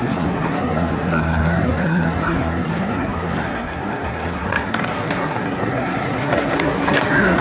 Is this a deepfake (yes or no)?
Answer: yes